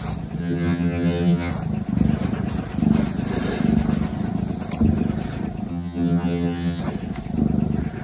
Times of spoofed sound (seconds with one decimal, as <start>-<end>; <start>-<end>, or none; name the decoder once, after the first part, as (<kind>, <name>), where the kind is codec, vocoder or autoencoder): 0.4-1.5 (vocoder, HiFi-GAN); 5.7-6.8

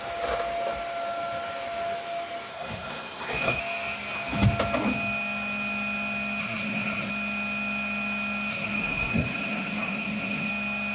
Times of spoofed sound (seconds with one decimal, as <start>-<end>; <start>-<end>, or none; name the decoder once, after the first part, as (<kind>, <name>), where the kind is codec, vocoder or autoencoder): 2.5-3.6 (codec, SNAC); 6.4-7.1; 8.5-10.5

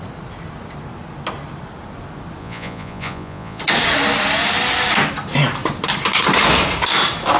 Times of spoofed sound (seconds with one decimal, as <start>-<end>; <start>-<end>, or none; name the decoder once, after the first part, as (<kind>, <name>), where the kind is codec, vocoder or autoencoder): 2.4-3.6 (vocoder, Vocos)

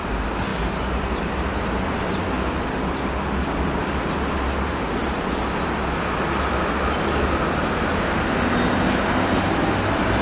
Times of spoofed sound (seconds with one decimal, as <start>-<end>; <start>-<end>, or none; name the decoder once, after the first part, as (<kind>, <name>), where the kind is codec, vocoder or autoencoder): none

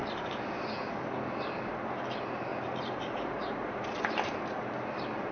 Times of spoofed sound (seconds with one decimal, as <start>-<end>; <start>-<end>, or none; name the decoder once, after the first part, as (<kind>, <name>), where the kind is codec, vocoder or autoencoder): none